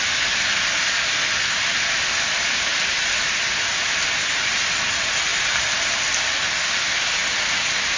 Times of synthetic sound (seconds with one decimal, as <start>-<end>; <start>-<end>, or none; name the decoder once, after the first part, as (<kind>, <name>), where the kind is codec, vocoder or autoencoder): none